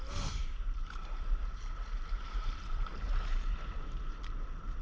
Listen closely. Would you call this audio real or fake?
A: fake